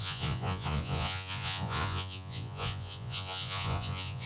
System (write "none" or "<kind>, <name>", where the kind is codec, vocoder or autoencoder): vocoder, Vocos